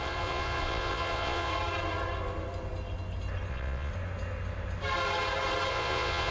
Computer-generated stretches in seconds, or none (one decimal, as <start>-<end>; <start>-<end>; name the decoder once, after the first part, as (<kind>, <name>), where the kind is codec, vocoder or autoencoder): 0.0-1.5 (vocoder, Vocos); 3.5-3.9; 5.7-6.3